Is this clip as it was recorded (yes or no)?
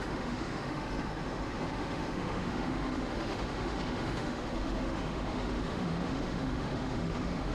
no